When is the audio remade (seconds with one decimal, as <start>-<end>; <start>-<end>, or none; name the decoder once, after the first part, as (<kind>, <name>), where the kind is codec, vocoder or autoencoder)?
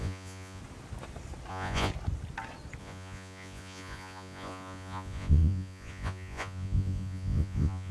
0.0-0.6 (vocoder, Vocos); 1.5-1.9; 2.8-7.9